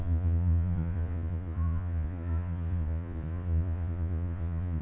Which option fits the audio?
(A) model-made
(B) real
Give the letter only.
A